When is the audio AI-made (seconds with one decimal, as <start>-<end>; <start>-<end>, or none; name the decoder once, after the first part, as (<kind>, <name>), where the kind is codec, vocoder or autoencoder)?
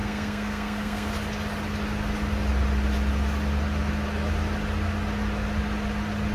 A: 0.0-1.1 (codec, SNAC)